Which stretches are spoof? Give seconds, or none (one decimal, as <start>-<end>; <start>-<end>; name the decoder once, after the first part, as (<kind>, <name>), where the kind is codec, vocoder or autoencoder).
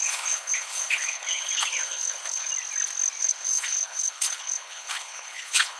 0.0-2.5 (codec, HILCodec); 3.2-5.8